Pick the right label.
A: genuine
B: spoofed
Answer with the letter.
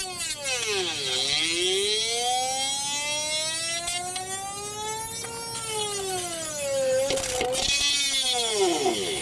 A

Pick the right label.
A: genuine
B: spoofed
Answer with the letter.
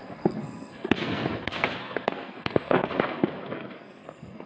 B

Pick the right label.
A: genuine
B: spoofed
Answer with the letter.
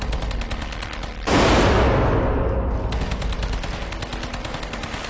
A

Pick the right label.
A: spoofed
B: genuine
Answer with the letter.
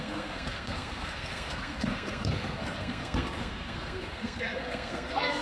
A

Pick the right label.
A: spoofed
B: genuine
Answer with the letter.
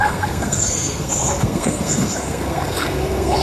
A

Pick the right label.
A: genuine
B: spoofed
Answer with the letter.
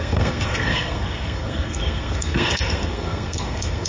B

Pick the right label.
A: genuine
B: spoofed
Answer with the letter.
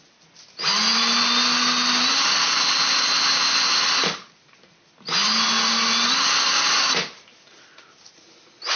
A